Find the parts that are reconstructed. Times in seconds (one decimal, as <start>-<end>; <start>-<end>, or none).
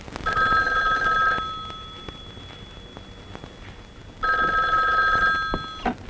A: none